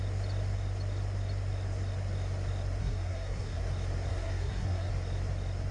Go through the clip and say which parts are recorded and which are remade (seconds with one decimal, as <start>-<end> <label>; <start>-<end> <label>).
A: 0.0-2.8 recorded; 2.8-3.6 remade; 3.6-4.1 recorded; 4.1-4.9 remade; 4.9-5.7 recorded